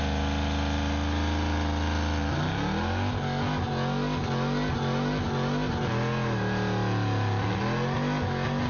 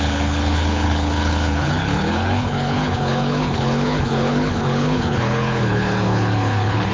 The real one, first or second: first